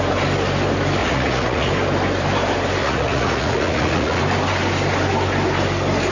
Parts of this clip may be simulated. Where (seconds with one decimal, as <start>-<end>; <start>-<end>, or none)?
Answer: 1.0-1.7; 2.8-4.2